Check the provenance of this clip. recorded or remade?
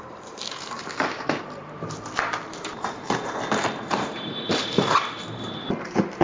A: remade